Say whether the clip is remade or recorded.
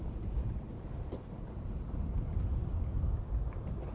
remade